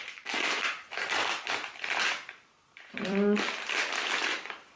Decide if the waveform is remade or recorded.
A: remade